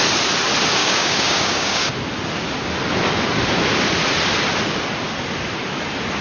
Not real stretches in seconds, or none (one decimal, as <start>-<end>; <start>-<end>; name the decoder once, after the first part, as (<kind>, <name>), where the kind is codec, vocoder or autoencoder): 0.8-1.9 (codec, DAC)